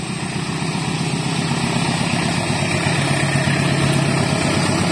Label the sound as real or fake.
real